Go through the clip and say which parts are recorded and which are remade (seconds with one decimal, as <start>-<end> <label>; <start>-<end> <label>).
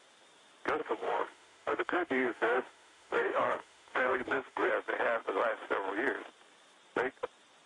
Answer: 0.0-0.8 recorded; 0.8-4.7 remade; 4.7-7.7 recorded